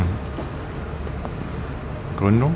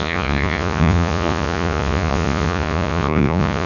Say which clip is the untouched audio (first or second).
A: first